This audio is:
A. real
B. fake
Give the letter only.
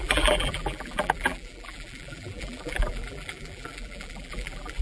B